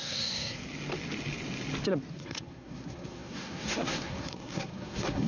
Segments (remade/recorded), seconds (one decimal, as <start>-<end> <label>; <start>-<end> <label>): 0.0-0.6 remade; 0.6-2.1 recorded; 2.1-5.3 remade